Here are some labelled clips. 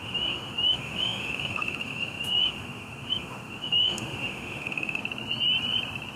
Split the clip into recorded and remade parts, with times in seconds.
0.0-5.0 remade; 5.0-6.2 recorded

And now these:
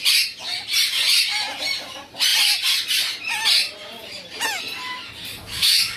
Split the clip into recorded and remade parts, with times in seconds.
0.0-5.3 recorded; 5.3-6.0 remade

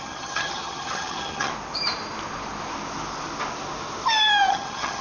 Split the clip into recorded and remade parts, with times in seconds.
0.0-1.5 remade; 1.5-4.5 recorded; 4.5-5.0 remade

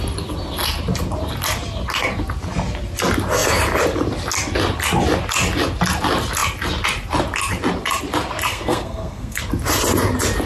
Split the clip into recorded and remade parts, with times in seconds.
0.0-8.5 recorded; 8.5-9.4 remade; 9.4-10.5 recorded

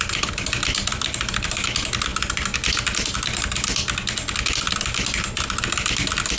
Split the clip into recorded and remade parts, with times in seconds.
0.0-6.4 recorded

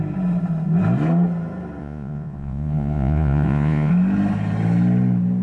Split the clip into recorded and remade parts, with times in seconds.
0.0-1.8 recorded; 1.8-3.9 remade; 3.9-5.4 recorded

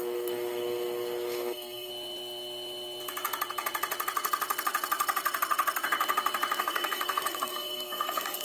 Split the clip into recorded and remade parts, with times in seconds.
0.0-1.9 remade; 1.9-6.6 recorded; 6.6-8.4 remade

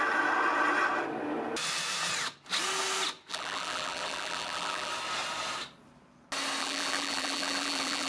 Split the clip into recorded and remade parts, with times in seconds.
0.0-3.3 recorded; 3.3-4.9 remade; 4.9-6.6 recorded; 6.6-8.1 remade